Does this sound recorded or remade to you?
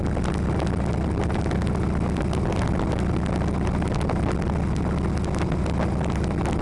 recorded